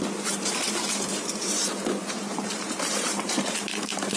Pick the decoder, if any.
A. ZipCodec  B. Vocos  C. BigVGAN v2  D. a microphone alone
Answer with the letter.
C